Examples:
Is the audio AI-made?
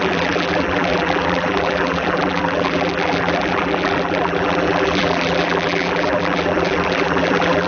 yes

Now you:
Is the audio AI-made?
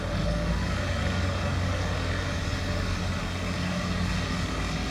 yes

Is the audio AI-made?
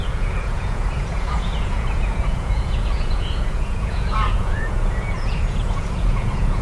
yes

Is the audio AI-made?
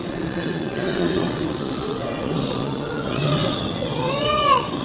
yes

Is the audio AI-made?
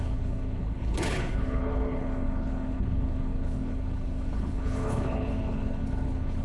yes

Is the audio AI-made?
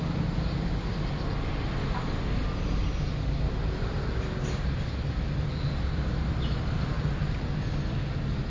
no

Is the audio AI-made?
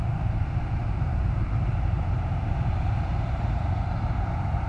yes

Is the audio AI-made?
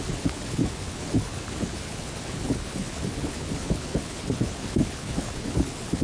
yes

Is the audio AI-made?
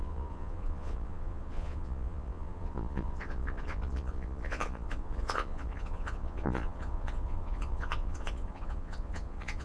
yes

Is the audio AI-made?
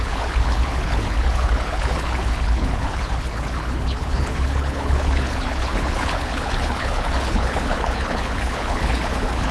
yes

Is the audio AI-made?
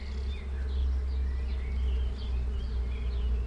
no